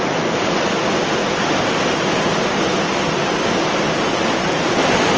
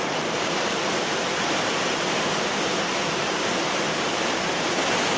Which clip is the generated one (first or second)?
second